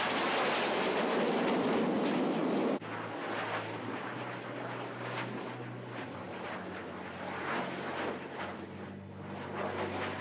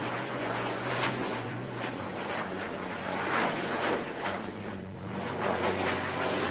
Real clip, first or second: first